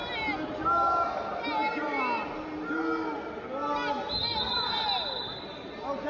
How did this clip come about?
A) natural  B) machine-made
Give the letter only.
A